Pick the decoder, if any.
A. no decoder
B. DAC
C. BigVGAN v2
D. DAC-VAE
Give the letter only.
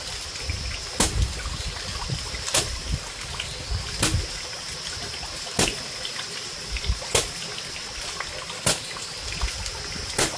A